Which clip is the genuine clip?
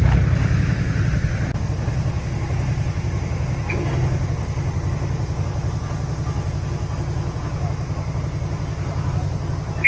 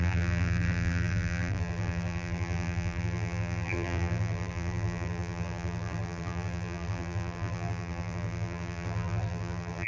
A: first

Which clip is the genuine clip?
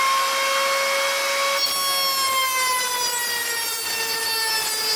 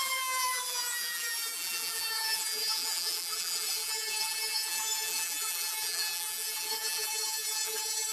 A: first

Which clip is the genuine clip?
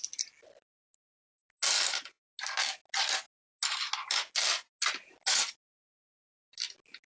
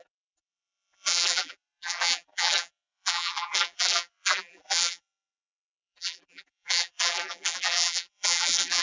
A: first